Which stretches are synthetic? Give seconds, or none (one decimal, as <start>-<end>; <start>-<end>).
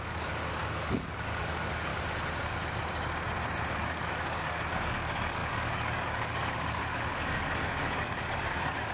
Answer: 0.0-1.9; 3.7-8.9